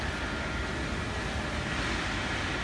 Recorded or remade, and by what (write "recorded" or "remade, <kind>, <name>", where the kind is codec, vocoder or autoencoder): recorded